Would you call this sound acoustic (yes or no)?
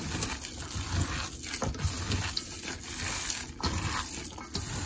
yes